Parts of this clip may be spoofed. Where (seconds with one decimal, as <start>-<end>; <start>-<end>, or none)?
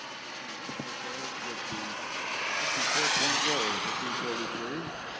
none